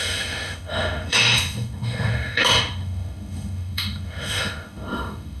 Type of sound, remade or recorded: remade